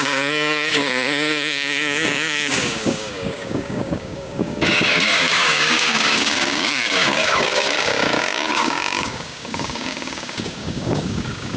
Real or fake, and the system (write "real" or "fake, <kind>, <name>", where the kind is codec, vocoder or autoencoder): fake, codec, DAC